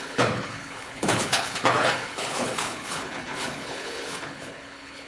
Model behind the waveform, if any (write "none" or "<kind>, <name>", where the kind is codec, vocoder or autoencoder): codec, HILCodec